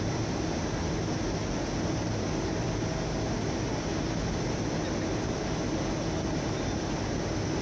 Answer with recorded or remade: recorded